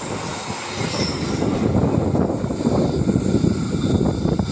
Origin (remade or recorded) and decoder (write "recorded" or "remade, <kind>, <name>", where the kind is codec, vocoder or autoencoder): recorded